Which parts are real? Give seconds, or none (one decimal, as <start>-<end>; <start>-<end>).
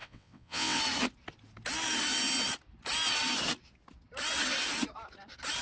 0.8-5.6